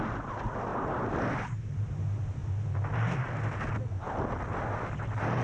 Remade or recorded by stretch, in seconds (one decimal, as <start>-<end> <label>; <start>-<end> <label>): 0.0-5.4 recorded